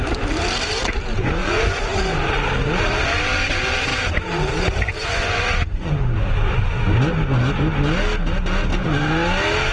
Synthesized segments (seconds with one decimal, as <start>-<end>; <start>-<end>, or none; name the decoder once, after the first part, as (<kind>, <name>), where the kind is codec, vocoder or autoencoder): 1.4-2.0 (vocoder, Vocos); 5.0-5.9